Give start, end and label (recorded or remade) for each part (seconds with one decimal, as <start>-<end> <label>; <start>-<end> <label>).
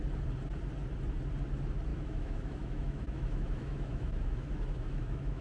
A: 0.0-1.9 recorded; 1.9-5.4 remade